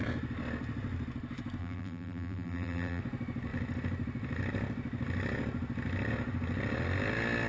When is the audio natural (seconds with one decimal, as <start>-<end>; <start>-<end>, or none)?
0.0-1.6; 3.0-7.5